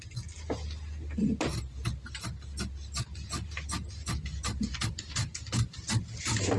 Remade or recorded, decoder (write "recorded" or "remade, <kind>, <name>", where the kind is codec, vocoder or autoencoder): recorded